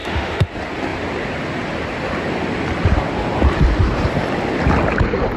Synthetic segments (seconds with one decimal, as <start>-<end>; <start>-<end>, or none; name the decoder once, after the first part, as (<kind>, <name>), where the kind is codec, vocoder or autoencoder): 0.0-0.5 (autoencoder, DAC-VAE)